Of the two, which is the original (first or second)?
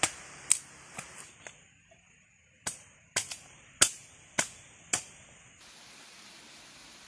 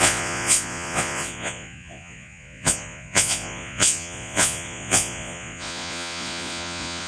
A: first